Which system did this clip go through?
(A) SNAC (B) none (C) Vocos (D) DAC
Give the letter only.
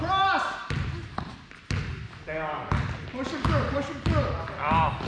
B